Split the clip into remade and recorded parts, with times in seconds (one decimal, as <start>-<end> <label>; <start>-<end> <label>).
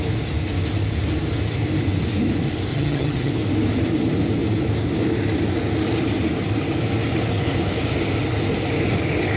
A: 0.0-2.7 recorded; 2.7-3.3 remade; 3.3-9.4 recorded